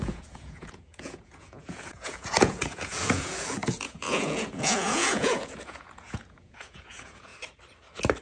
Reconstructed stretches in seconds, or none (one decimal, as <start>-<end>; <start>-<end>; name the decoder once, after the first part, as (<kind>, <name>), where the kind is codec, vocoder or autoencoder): 0.0-7.3 (vocoder, Vocos)